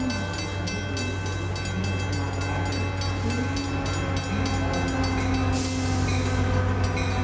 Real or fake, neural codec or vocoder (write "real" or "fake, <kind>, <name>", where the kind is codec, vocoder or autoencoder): real